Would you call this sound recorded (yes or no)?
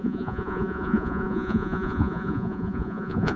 no